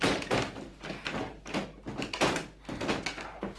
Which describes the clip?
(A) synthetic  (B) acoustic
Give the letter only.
B